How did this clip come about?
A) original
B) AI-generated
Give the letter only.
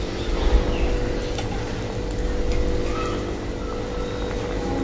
A